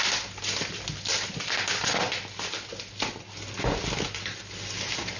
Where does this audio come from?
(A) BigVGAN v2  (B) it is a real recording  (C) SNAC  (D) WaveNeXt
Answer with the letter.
B